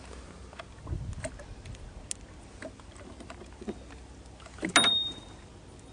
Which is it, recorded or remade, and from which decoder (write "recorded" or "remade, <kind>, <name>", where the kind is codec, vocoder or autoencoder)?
recorded